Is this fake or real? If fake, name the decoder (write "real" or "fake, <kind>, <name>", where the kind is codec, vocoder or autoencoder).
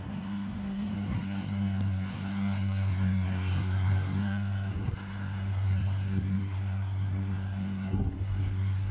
fake, codec, SNAC